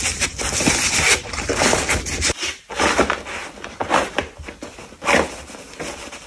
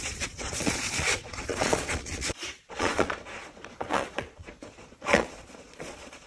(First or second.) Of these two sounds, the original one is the first